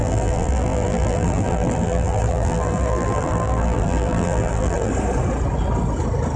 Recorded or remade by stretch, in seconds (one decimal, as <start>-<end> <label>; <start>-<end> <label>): 0.0-4.9 remade; 4.9-6.4 recorded

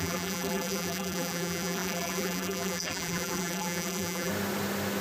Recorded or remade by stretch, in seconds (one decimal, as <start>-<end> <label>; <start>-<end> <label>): 0.0-4.3 remade; 4.3-5.0 recorded

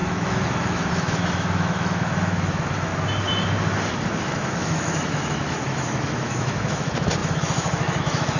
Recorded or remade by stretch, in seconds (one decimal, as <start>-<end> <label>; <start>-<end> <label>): 0.0-2.9 remade; 2.9-4.2 recorded; 4.2-8.4 remade

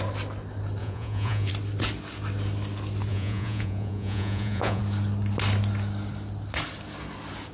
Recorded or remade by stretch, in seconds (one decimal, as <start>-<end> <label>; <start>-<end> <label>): 0.0-0.8 recorded; 0.8-1.5 remade; 1.5-3.1 recorded; 3.1-4.8 remade; 4.8-7.5 recorded

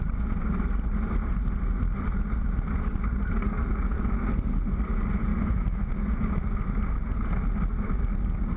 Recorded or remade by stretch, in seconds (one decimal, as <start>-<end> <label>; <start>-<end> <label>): 0.0-5.3 recorded; 5.3-5.9 remade; 5.9-8.6 recorded